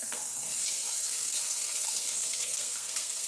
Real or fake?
fake